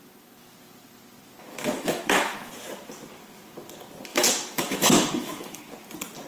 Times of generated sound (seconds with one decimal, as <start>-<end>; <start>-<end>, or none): 1.5-2.5; 4.1-5.6